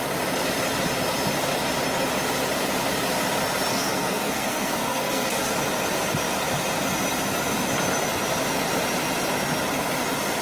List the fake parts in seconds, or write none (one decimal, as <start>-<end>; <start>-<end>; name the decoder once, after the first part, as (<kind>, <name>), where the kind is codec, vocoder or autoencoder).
3.7-5.5 (codec, SNAC)